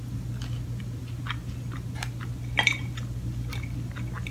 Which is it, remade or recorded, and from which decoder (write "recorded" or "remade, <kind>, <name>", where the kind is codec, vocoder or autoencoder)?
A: recorded